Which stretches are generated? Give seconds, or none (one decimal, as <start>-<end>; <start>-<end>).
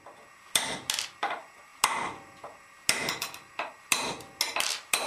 none